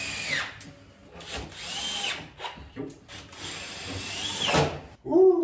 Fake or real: real